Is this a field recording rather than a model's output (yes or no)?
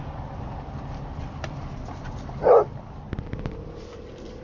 yes